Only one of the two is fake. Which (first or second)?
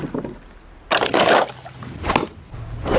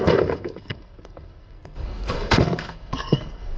second